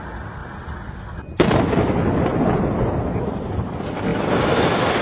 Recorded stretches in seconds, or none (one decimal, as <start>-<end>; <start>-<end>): 0.0-5.0